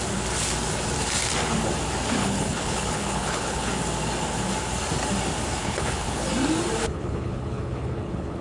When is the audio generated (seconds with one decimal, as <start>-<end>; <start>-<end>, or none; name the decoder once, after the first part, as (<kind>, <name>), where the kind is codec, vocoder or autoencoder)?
2.2-3.7 (codec, HILCodec); 5.6-6.3; 6.8-8.4